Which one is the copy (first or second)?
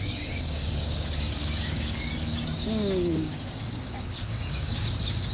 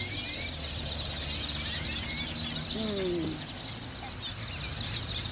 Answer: first